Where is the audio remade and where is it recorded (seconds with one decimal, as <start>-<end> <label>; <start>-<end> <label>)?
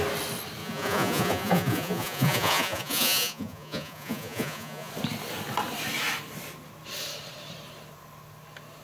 0.0-0.6 recorded; 0.6-4.9 remade; 4.9-8.8 recorded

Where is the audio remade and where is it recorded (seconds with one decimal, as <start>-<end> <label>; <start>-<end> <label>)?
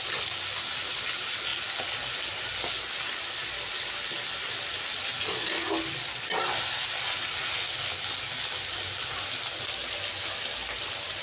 0.0-11.2 recorded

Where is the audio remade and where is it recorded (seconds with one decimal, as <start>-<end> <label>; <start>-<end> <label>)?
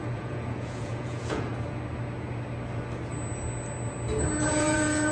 0.0-1.5 remade; 1.5-4.6 recorded; 4.6-5.1 remade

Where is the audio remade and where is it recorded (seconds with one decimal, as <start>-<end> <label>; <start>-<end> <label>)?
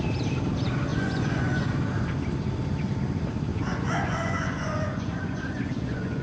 0.0-0.9 recorded; 0.9-1.7 remade; 1.7-3.5 recorded; 3.5-6.2 remade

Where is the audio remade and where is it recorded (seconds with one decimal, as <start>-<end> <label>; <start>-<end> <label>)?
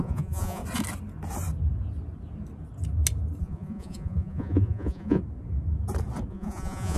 0.0-0.6 remade; 0.6-3.4 recorded; 3.4-5.2 remade; 5.2-6.3 recorded; 6.3-7.0 remade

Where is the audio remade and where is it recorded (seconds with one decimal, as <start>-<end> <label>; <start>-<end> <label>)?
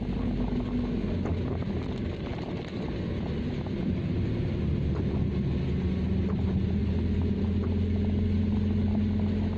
0.0-9.6 recorded